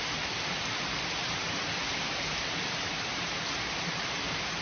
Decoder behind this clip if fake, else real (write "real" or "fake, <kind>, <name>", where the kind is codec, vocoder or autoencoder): fake, vocoder, BigVGAN v2